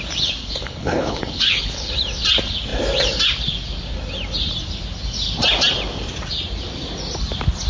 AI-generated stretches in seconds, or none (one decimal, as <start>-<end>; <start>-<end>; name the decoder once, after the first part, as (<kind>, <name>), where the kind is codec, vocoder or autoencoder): 0.4-1.9 (codec, HILCodec)